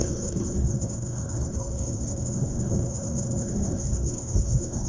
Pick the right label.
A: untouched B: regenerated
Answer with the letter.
B